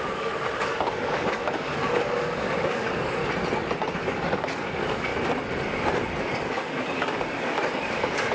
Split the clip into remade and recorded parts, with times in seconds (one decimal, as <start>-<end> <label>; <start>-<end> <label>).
0.0-3.2 remade; 3.2-3.9 recorded; 3.9-5.1 remade; 5.1-6.2 recorded; 6.2-8.3 remade